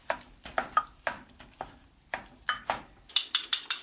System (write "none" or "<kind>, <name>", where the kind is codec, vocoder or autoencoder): none